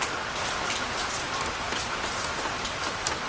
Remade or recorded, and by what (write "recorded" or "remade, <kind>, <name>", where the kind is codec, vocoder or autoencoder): recorded